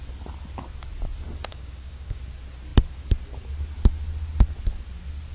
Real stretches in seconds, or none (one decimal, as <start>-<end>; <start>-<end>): 0.0-1.5; 2.2-5.3